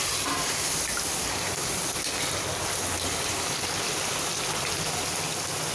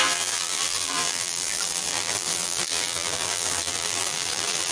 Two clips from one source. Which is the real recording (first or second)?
first